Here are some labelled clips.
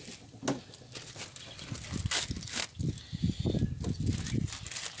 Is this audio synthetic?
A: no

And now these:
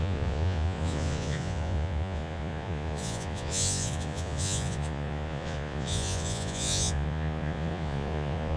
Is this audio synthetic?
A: yes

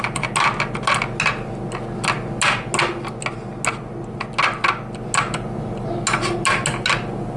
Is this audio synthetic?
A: no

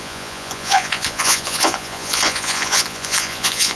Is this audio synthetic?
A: yes